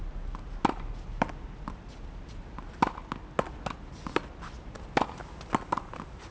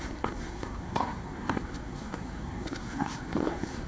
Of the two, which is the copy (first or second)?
second